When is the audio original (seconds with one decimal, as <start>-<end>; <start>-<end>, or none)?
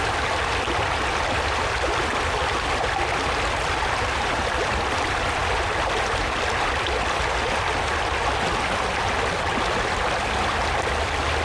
0.0-11.4